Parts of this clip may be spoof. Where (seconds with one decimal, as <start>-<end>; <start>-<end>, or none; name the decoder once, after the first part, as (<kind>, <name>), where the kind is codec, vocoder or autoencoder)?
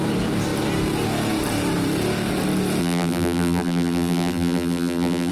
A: 2.8-5.3 (vocoder, BigVGAN v2)